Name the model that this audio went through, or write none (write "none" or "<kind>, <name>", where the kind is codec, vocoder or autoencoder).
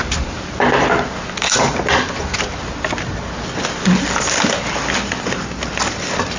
none